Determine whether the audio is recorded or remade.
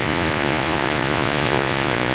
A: remade